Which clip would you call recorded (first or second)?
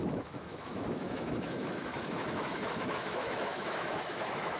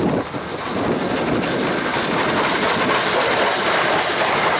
second